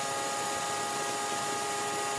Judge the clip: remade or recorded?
recorded